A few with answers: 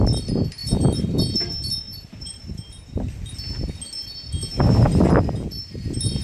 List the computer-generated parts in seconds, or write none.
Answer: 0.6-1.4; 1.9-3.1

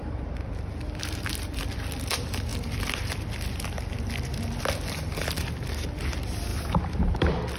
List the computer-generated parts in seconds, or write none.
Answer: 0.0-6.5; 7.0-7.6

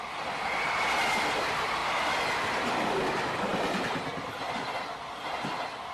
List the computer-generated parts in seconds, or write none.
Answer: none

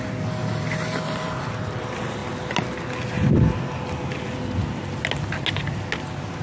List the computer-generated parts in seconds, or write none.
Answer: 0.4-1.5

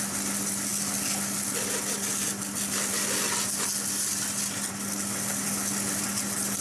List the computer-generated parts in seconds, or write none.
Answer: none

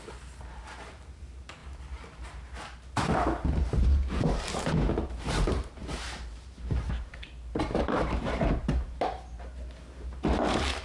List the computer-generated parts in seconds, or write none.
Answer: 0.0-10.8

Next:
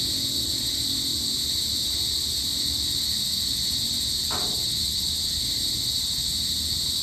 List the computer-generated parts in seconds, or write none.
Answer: 1.1-3.0